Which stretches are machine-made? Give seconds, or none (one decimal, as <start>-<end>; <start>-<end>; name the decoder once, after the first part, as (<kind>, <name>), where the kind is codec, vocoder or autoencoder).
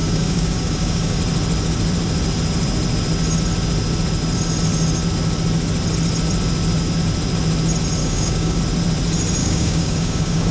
0.0-1.2 (codec, DAC); 8.0-8.6; 9.4-10.5